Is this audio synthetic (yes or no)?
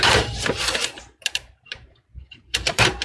yes